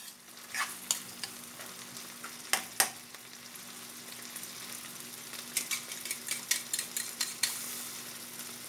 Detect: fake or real real